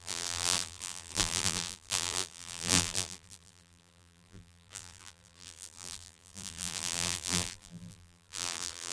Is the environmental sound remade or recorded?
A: remade